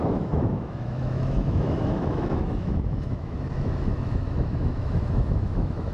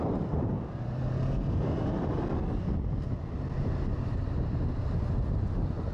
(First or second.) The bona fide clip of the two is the second